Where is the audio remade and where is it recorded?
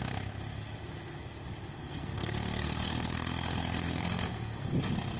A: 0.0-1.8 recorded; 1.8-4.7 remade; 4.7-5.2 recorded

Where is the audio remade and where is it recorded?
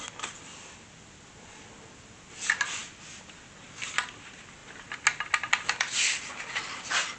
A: 0.0-7.2 recorded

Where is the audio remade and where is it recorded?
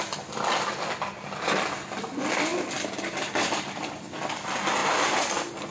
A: 0.0-2.5 recorded; 2.5-3.3 remade; 3.3-5.7 recorded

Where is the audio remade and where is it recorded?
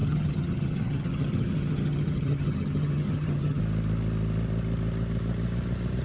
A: 0.0-3.6 remade; 3.6-6.0 recorded